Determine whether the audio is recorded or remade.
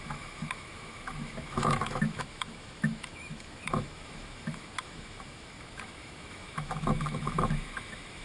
remade